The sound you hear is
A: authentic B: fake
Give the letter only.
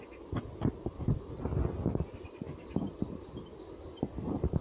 A